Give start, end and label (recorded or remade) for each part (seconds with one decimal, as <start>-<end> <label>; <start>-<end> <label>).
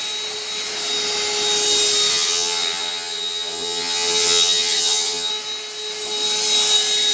0.0-2.1 recorded; 2.1-5.3 remade; 5.3-7.1 recorded